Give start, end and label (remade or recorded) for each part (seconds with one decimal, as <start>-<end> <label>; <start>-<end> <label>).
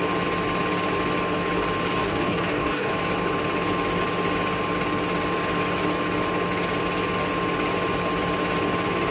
0.0-2.0 recorded; 2.0-2.9 remade; 2.9-9.1 recorded